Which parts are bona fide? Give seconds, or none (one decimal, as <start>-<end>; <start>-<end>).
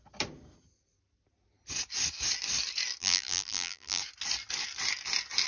0.0-3.0; 4.0-5.5